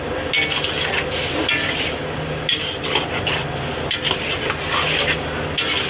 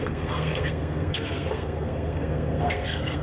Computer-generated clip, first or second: second